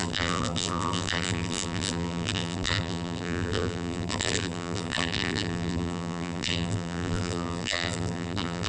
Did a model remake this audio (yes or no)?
yes